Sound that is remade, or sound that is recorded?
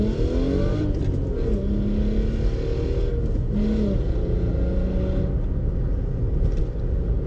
recorded